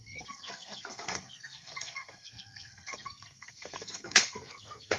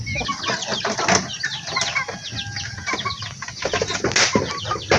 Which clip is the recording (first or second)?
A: second